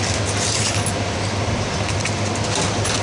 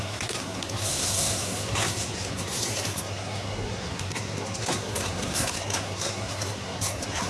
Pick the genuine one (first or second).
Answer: first